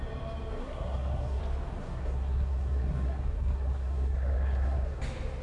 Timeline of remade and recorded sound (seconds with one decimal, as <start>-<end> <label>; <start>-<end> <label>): 0.0-0.6 recorded; 0.6-1.4 remade; 1.4-1.8 recorded; 1.8-5.0 remade; 5.0-5.4 recorded